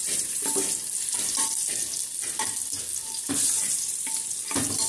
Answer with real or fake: real